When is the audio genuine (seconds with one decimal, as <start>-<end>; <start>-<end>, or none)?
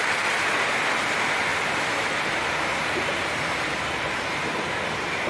0.0-1.5; 4.7-5.3